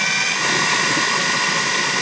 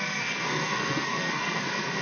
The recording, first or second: first